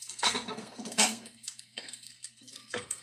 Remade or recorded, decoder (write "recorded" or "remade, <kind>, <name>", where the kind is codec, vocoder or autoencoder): remade, codec, SNAC